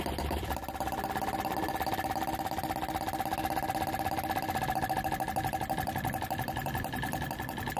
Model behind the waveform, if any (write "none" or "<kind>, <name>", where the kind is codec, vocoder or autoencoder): none